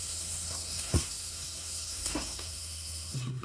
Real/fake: fake